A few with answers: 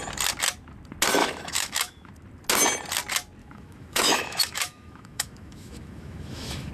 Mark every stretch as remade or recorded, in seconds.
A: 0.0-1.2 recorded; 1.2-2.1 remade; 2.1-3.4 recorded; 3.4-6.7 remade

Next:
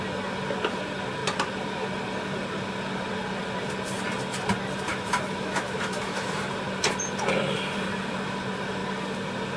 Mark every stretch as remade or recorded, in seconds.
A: 0.0-4.9 recorded; 4.9-6.4 remade; 6.4-9.6 recorded

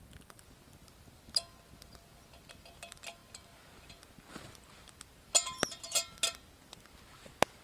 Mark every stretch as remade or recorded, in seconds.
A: 0.0-7.6 recorded

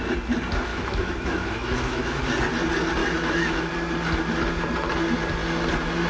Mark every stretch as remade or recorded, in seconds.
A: 0.0-0.7 recorded; 0.7-2.2 remade; 2.2-3.0 recorded; 3.0-3.7 remade; 3.7-6.1 recorded

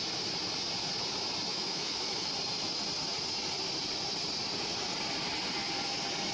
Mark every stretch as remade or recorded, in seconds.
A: 0.0-1.5 recorded; 1.5-2.3 remade; 2.3-6.3 recorded

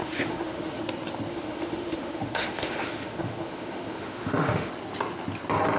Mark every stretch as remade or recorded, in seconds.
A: 0.0-0.8 remade; 0.8-1.3 recorded; 1.3-4.7 remade; 4.7-5.8 recorded

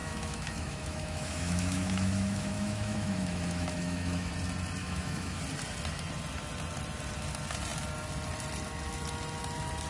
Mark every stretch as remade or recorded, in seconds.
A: 0.0-4.3 remade; 4.3-4.8 recorded; 4.8-5.4 remade; 5.4-9.9 recorded